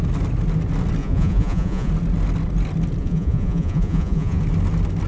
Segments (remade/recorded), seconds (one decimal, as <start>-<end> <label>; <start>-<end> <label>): 0.0-1.0 recorded; 1.0-1.9 remade; 1.9-3.0 recorded; 3.0-4.4 remade; 4.4-5.1 recorded